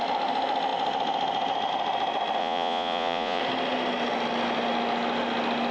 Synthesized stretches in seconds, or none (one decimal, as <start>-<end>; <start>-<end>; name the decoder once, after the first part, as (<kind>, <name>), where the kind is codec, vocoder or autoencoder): 2.4-3.4 (vocoder, Vocos)